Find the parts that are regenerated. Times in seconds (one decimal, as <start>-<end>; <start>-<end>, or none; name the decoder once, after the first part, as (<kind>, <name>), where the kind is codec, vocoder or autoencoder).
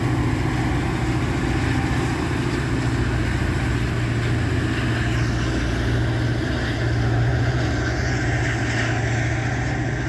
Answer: 7.3-8.2 (vocoder, Vocos)